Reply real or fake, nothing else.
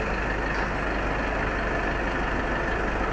real